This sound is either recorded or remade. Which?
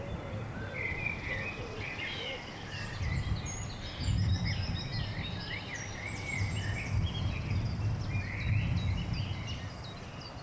recorded